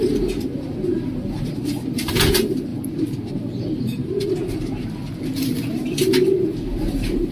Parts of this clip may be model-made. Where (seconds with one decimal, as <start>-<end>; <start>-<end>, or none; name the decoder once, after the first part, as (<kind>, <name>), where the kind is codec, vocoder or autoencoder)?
0.0-5.0 (vocoder, BigVGAN v2); 5.7-7.3